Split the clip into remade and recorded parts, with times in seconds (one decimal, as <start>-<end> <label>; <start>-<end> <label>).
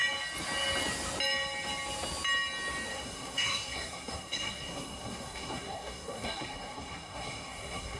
0.0-2.9 recorded; 2.9-8.0 remade